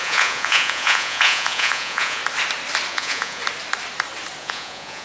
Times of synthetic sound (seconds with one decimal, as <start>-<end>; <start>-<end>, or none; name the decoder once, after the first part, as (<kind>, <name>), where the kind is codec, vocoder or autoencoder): 0.0-2.2 (vocoder, Vocos); 2.9-3.4; 4.4-5.0